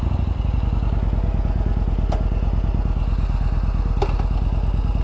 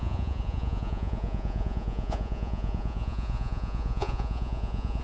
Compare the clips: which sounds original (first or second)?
first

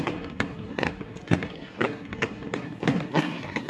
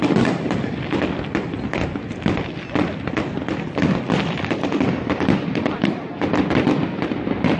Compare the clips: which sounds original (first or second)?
second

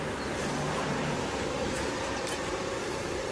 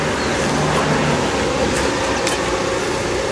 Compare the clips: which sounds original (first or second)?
second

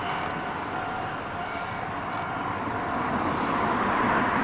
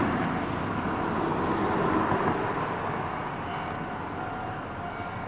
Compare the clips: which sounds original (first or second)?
second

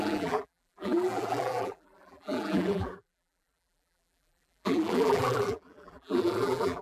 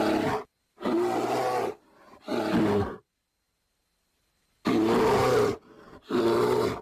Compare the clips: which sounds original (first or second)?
second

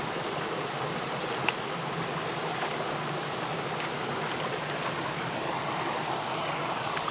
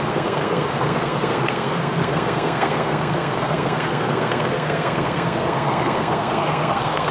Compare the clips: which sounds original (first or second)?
first